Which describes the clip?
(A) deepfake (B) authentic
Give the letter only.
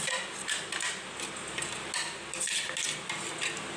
B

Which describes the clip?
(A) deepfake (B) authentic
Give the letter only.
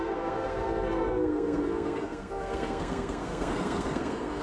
A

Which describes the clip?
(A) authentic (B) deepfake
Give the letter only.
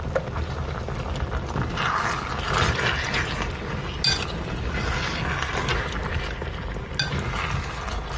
A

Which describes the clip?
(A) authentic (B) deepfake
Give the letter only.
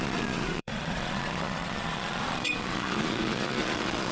B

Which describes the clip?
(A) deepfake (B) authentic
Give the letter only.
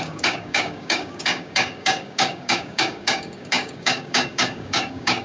A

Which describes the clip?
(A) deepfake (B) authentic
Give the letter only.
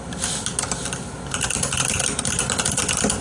B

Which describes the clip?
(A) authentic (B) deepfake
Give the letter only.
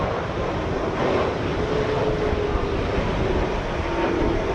A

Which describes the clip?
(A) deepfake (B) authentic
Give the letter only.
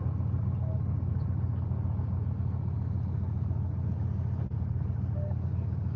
B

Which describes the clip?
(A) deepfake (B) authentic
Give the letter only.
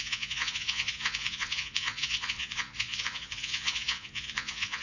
A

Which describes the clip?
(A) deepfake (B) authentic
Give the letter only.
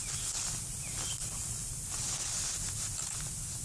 B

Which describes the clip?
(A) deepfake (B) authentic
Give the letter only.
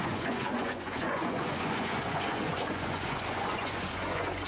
A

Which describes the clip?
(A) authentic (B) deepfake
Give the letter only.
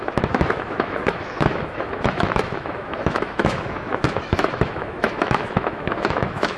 B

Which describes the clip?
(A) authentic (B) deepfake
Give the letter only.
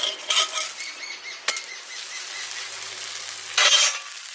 A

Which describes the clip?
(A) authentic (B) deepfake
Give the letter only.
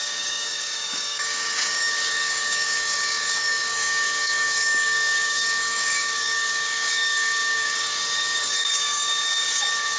B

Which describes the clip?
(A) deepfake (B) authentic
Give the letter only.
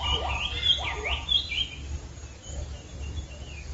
A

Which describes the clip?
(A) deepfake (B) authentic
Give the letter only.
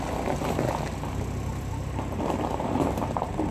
B